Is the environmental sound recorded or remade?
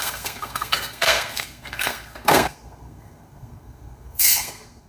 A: remade